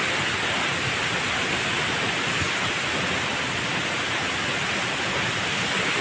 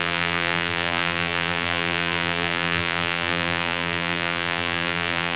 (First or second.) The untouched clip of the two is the first